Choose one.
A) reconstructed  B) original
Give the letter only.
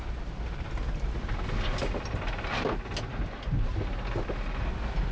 B